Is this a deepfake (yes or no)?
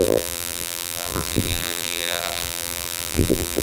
yes